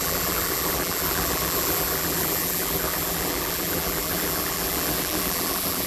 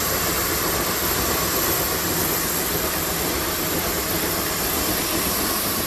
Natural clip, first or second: second